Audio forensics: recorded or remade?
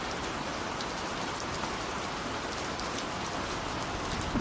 recorded